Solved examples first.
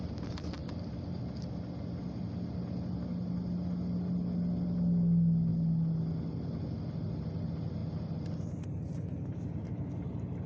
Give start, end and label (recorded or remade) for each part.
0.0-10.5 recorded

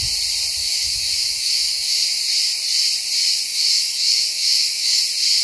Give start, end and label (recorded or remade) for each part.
0.0-0.6 recorded; 0.6-2.2 remade; 2.2-3.5 recorded; 3.5-5.0 remade; 5.0-5.4 recorded

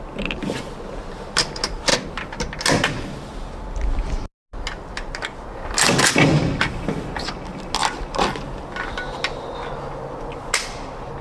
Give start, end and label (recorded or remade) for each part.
0.0-11.2 recorded

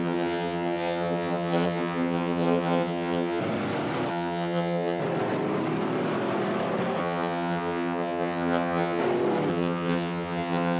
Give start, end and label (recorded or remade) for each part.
0.0-3.4 remade; 3.4-4.1 recorded; 4.1-5.0 remade; 5.0-7.0 recorded; 7.0-9.0 remade; 9.0-9.5 recorded; 9.5-10.8 remade

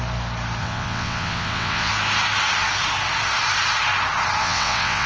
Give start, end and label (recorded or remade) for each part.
0.0-0.6 recorded; 0.6-1.9 remade; 1.9-4.4 recorded; 4.4-5.1 remade